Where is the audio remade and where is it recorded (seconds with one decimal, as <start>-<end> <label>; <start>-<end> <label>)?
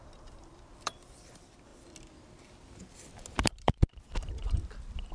0.0-1.7 remade; 1.7-4.0 recorded; 4.0-5.1 remade